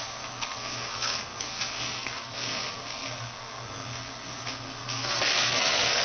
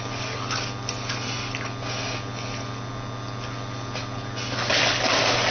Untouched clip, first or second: second